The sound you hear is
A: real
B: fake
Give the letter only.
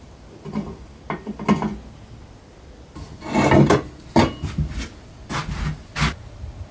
A